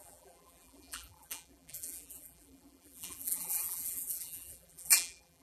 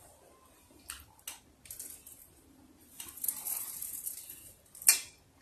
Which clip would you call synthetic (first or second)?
first